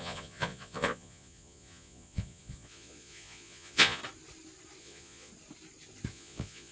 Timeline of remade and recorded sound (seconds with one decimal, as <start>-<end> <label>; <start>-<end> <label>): 0.0-4.0 remade; 4.0-4.8 recorded; 4.8-5.3 remade; 5.3-6.1 recorded; 6.1-6.7 remade